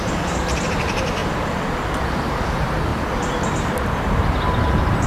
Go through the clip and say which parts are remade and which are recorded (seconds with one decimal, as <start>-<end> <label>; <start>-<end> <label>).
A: 0.0-1.2 remade; 1.2-2.0 recorded; 2.0-2.9 remade; 2.9-3.4 recorded; 3.4-5.1 remade